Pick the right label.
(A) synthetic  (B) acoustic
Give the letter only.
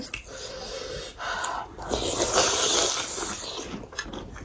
B